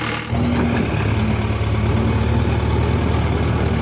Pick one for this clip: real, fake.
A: real